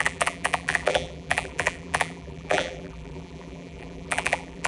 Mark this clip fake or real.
fake